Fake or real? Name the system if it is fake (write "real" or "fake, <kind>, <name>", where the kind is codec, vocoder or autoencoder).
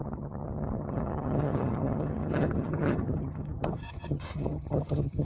fake, vocoder, HiFi-GAN